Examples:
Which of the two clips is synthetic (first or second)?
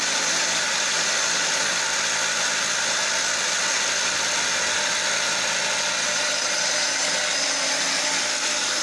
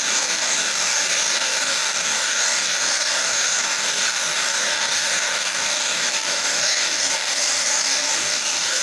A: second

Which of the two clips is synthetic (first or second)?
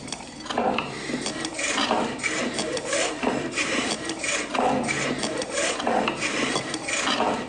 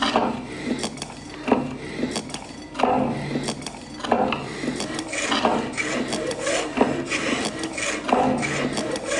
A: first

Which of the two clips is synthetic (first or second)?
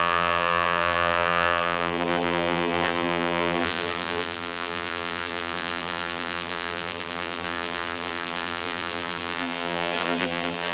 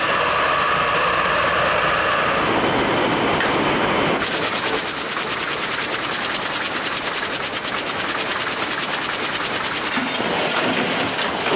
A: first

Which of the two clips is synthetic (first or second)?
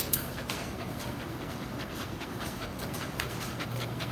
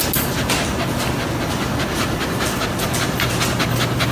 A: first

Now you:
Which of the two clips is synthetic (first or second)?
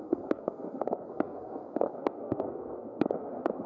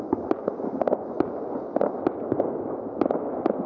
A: first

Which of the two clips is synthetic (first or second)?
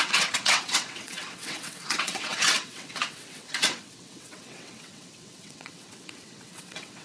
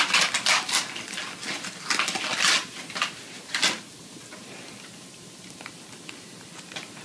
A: first